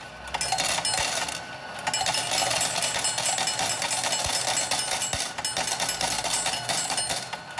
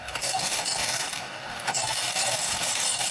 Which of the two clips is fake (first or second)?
second